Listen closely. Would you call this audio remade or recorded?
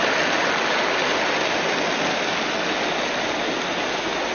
recorded